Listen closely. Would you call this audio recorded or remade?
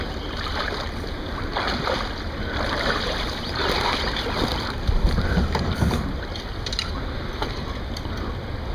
recorded